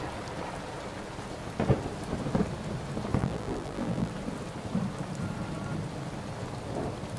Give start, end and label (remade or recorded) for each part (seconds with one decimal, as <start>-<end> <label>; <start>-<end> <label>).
0.0-3.2 recorded; 3.2-4.1 remade; 4.1-7.2 recorded